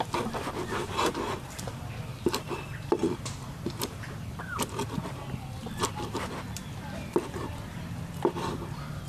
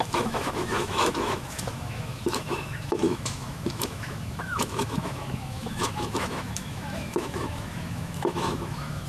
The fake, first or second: second